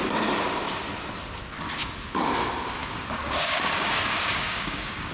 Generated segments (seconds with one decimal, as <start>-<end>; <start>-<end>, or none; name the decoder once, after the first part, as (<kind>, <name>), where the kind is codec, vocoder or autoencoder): 2.8-5.1 (codec, DAC)